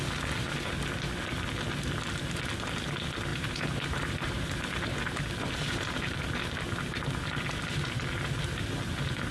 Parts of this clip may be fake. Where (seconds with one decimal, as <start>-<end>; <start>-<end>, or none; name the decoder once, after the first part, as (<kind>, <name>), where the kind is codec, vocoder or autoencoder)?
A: 3.3-5.2 (vocoder, BigVGAN v2)